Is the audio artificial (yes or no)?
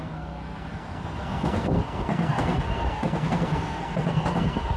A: yes